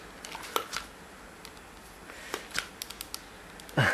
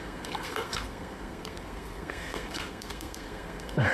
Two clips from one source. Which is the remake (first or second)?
second